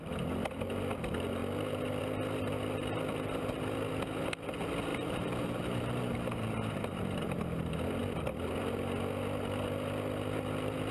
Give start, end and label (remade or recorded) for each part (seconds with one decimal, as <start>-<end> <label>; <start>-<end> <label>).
0.0-4.9 recorded; 4.9-7.4 remade; 7.4-10.9 recorded